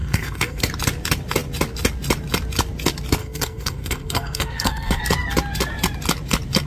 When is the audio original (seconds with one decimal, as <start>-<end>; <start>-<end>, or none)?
0.6-3.2; 5.0-6.7

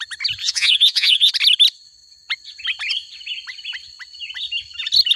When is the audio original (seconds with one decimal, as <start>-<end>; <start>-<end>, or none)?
0.0-0.4; 1.3-5.2

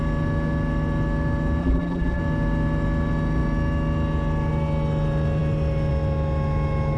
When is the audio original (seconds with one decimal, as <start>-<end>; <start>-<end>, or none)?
0.0-1.6; 2.2-7.0

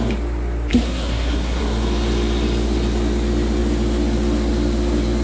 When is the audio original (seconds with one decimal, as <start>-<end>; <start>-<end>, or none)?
0.0-0.7; 1.6-5.2

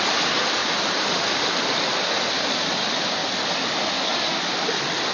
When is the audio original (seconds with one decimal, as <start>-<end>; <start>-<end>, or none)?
0.0-5.1

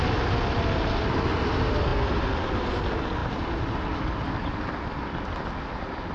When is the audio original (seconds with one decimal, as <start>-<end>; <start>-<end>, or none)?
0.0-6.1

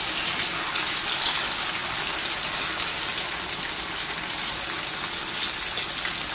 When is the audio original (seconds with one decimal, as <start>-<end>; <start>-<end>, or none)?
0.0-6.3